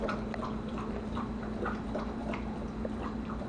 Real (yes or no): no